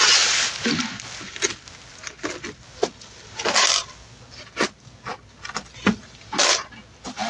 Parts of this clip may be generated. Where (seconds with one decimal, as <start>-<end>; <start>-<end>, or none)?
none